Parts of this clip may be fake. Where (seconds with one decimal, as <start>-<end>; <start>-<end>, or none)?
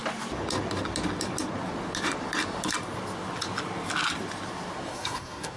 4.9-5.6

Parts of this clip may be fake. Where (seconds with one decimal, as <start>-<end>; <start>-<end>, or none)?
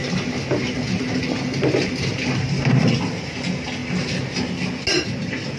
none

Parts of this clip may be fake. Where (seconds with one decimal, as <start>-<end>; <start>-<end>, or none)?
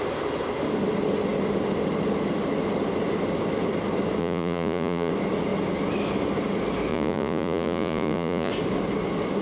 4.2-5.1; 6.9-8.5